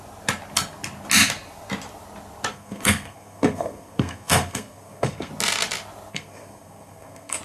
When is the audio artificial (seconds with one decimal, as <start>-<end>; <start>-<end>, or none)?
2.5-5.3; 6.1-7.4